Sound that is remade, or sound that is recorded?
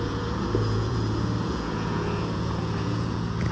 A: remade